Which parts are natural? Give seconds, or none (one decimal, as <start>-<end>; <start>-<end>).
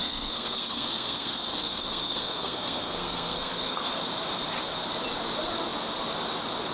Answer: 4.0-6.7